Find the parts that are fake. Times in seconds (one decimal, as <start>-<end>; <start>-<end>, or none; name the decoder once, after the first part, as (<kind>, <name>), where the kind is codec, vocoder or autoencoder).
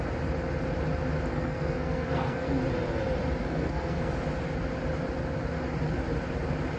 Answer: 1.3-2.6 (codec, SNAC); 3.4-4.1